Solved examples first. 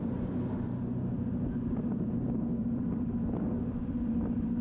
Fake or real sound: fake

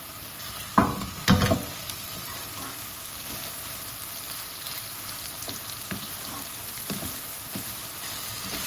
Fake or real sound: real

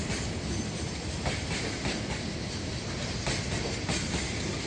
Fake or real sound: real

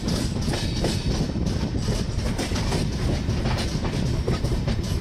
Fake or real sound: real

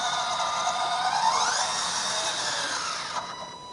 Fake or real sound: fake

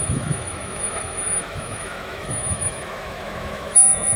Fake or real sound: fake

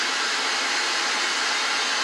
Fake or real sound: real